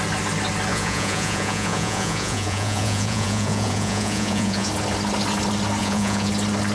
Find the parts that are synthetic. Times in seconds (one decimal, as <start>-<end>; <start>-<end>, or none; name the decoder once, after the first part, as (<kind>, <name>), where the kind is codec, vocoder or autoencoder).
0.7-4.7 (vocoder, Vocos); 5.8-6.3